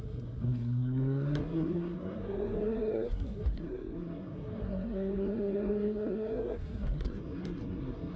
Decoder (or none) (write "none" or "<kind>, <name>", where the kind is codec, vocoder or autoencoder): codec, SNAC